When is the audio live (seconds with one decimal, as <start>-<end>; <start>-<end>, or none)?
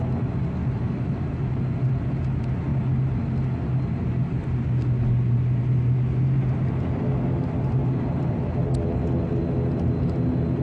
0.0-0.6; 1.6-7.8; 8.6-10.6